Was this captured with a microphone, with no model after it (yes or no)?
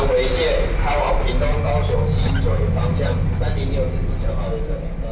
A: yes